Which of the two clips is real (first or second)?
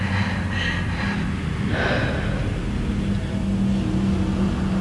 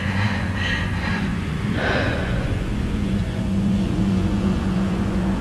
first